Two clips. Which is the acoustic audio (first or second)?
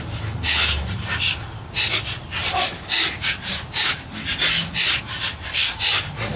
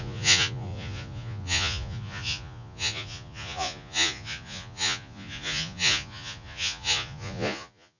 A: first